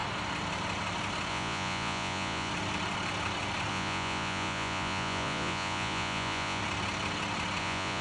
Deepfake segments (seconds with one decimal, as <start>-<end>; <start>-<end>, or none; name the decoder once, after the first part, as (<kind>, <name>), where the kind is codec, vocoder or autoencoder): 1.3-2.5 (vocoder, Vocos); 3.7-6.6; 7.6-8.0